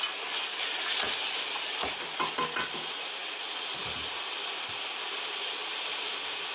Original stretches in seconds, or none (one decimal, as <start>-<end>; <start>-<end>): 0.0-6.5